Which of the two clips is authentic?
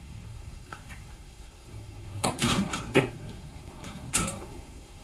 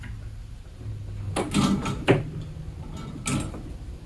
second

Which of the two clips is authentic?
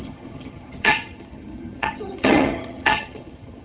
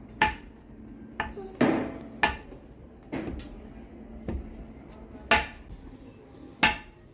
second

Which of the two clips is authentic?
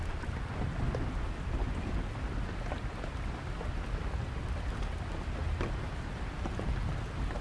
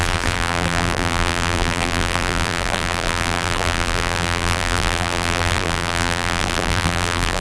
first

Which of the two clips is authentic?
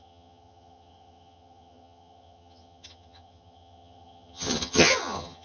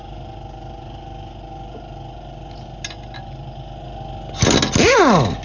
second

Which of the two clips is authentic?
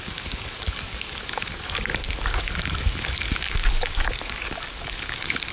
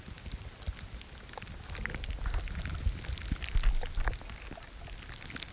second